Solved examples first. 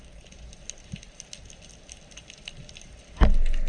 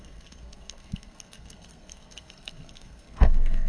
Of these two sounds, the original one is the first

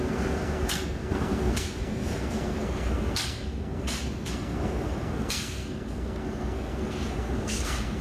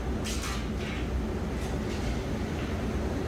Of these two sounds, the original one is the second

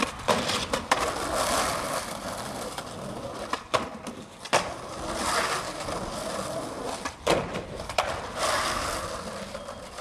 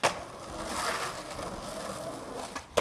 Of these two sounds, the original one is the second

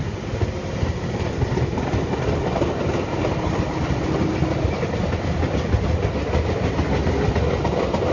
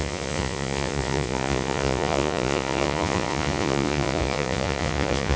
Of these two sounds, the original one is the first